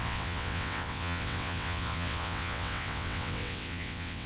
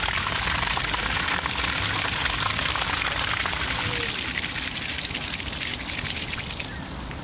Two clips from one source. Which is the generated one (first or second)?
first